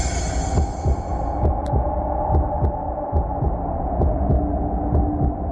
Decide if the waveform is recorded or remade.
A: recorded